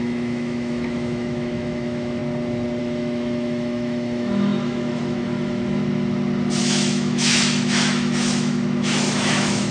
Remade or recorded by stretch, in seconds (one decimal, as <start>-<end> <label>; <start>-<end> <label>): 0.0-2.2 remade; 2.2-2.8 recorded; 2.8-5.8 remade; 5.8-6.6 recorded; 6.6-9.7 remade